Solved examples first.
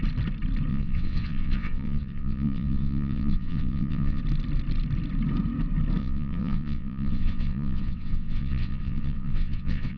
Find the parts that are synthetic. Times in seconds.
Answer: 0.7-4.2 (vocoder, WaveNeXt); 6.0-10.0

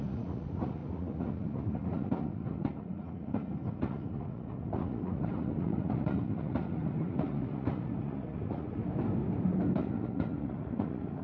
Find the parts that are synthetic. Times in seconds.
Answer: 0.0-8.8 (vocoder, Vocos); 9.8-11.2

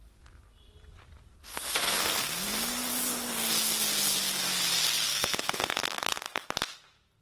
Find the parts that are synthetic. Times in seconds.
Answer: 1.5-2.2 (codec, SNAC); 5.0-6.5

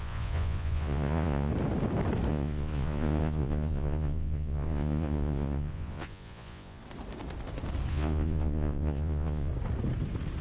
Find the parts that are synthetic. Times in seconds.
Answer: 0.0-1.5 (vocoder, Vocos); 2.3-6.8; 7.9-9.5